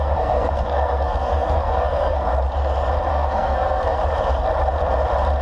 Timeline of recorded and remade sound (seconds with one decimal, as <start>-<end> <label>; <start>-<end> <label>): 0.0-2.3 remade; 2.3-3.1 recorded; 3.1-4.0 remade; 4.0-5.4 recorded